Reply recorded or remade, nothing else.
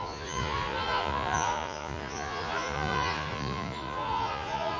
remade